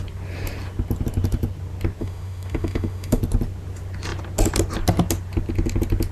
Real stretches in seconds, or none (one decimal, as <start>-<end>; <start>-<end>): 0.0-2.0; 3.2-6.1